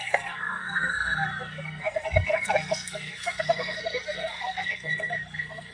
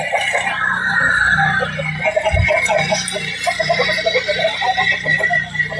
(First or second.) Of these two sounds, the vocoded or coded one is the first